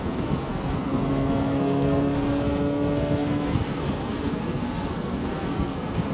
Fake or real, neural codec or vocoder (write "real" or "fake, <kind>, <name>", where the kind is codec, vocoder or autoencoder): fake, codec, SNAC